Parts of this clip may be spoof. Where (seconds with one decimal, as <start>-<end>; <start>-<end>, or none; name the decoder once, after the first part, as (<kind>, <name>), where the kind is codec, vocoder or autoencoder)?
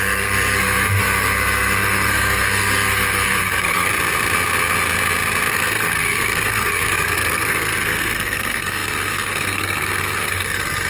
0.0-3.9 (codec, SNAC); 5.5-10.9